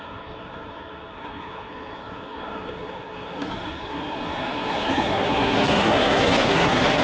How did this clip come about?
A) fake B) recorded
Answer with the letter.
A